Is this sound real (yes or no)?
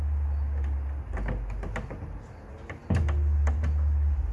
yes